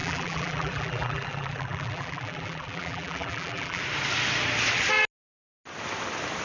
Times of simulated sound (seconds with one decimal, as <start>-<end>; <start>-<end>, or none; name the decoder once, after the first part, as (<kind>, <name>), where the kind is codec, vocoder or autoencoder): 0.0-3.8 (vocoder, BigVGAN v2)